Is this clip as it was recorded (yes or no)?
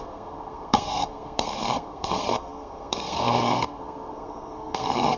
no